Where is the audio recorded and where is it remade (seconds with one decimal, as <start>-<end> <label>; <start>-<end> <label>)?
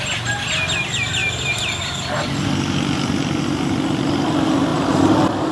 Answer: 0.0-5.5 recorded